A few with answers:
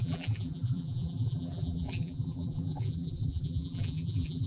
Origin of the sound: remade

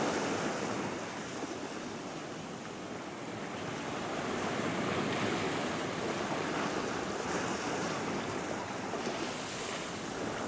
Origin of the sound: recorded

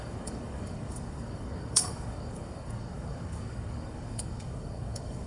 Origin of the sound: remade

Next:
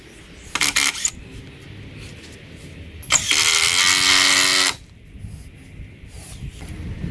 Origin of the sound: recorded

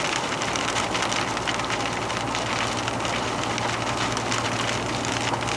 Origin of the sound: recorded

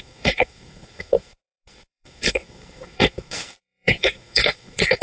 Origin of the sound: remade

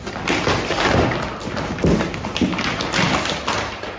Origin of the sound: recorded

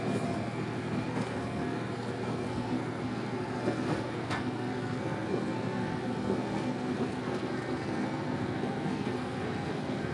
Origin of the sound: remade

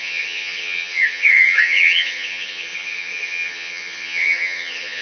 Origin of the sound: remade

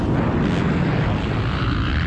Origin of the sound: recorded